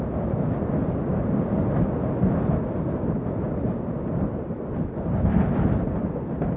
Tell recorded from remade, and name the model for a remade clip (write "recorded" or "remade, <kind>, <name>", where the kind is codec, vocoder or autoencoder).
recorded